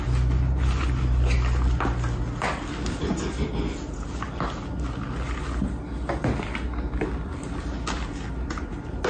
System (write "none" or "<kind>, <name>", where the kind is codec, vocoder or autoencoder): none